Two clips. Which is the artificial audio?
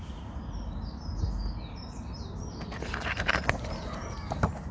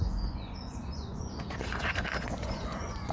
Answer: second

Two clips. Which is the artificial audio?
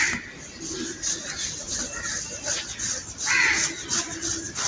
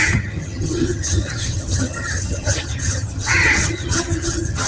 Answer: second